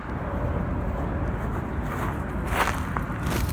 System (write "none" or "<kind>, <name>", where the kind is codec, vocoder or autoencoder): none